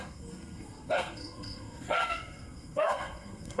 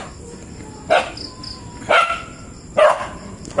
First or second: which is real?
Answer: second